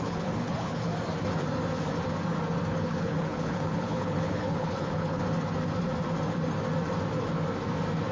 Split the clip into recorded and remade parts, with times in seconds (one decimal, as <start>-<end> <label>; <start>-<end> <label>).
0.0-0.9 remade; 0.9-2.7 recorded; 2.7-5.2 remade; 5.2-8.1 recorded